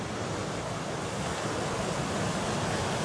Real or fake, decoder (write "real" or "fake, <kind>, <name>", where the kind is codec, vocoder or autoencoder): real